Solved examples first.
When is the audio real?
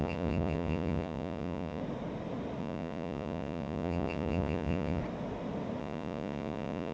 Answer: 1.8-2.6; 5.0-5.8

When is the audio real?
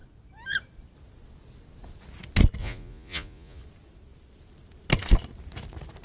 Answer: 0.0-2.6; 3.6-6.0